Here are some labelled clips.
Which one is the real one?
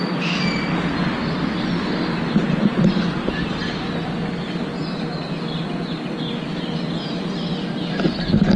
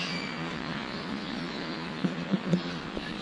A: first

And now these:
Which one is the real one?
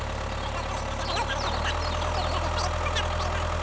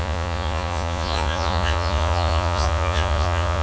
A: first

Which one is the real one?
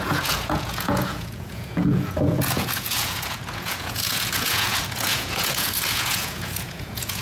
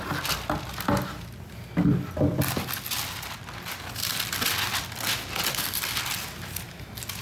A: second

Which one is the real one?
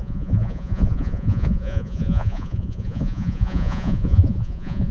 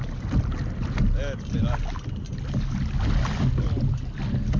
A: second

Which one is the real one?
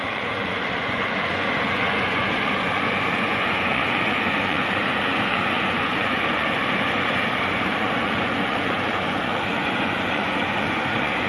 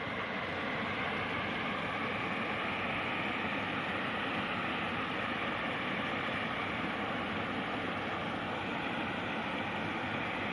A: second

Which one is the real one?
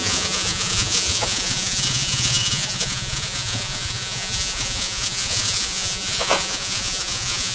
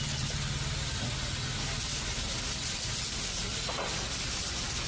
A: second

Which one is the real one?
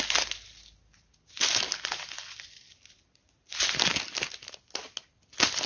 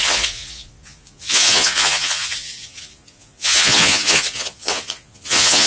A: first